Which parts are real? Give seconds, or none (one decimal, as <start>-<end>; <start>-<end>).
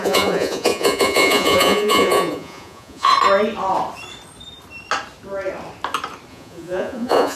3.1-6.3